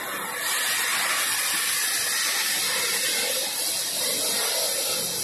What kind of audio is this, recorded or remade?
recorded